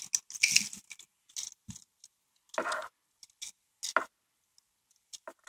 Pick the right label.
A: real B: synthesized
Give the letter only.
A